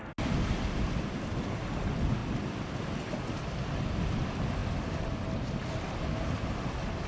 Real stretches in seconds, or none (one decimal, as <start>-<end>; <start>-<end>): 0.0-7.1